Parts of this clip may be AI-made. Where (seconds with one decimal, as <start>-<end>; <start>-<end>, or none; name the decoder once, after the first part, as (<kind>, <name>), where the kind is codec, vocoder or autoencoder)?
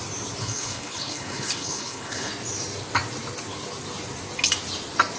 0.4-2.3 (codec, HILCodec)